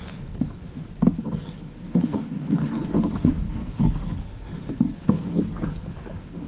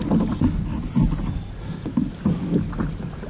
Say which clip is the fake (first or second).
first